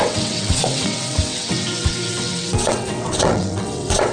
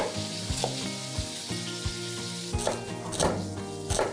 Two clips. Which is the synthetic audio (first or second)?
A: first